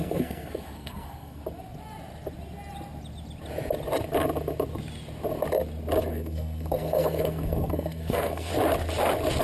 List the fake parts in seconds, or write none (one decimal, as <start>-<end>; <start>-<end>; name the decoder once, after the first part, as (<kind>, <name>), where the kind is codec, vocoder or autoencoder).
0.0-1.4 (codec, SNAC); 6.1-8.5